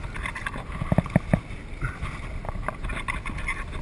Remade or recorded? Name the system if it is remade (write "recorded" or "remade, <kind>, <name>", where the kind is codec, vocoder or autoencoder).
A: recorded